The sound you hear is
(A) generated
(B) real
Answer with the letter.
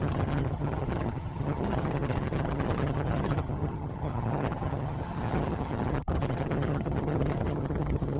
A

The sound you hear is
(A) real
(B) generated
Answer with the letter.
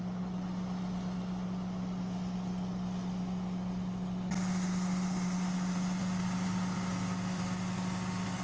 A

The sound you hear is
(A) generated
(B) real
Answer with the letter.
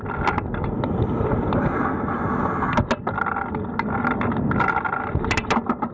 B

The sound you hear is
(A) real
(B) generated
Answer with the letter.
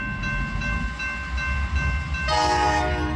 A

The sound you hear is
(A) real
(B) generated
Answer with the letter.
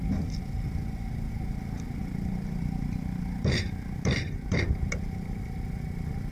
B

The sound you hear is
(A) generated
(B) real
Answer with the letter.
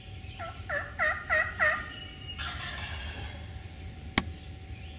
B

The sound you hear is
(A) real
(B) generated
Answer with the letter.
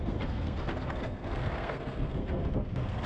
B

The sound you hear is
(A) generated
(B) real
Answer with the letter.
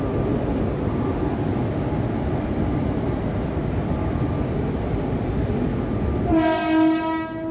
B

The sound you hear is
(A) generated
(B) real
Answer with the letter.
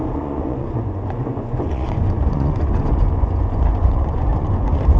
A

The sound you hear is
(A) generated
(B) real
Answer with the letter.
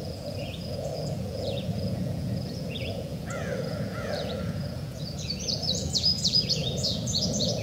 A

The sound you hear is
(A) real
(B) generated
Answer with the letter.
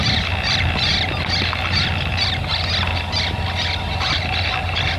A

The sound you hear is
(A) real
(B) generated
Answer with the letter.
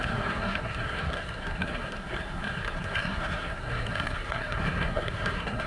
B